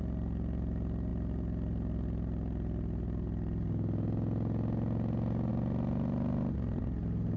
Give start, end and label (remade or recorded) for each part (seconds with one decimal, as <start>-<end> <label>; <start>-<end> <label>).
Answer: 0.0-7.4 recorded